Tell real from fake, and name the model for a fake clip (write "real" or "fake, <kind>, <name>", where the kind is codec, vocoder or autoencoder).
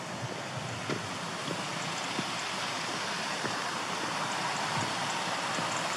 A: real